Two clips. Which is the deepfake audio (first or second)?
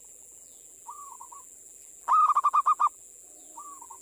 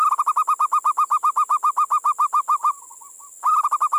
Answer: first